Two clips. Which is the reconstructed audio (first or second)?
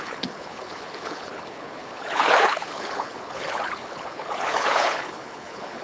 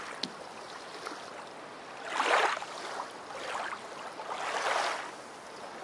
first